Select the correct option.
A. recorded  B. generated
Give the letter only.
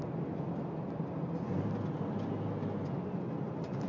A